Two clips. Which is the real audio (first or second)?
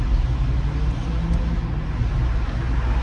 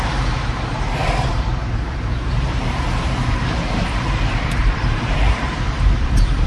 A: first